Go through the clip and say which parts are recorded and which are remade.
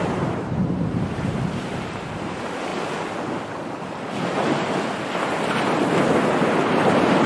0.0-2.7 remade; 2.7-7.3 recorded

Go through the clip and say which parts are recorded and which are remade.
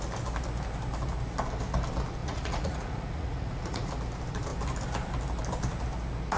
0.0-2.2 recorded; 2.2-3.9 remade; 3.9-6.4 recorded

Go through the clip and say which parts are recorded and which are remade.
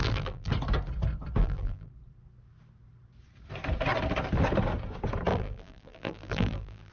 0.0-0.5 remade; 0.5-1.4 recorded; 1.4-1.9 remade; 1.9-5.3 recorded; 5.3-6.9 remade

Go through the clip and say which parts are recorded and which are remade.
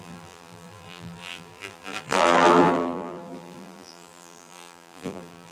0.0-5.5 remade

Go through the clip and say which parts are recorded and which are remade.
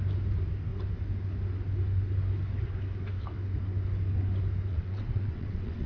0.0-4.7 recorded; 4.7-5.9 remade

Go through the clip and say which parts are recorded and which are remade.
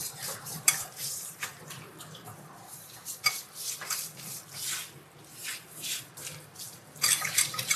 0.0-7.8 remade